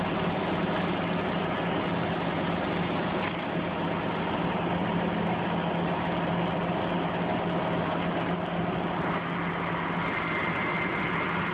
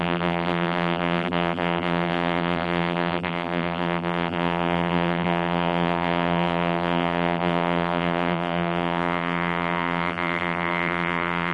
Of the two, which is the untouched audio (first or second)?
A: first